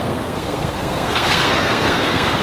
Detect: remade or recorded remade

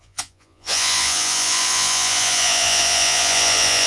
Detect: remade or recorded remade